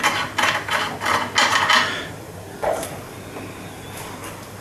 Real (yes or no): yes